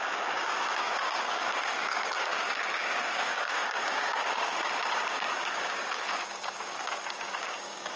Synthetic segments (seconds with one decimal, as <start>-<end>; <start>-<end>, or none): 0.0-8.0